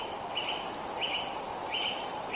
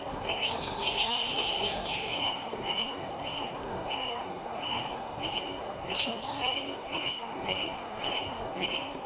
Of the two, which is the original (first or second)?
first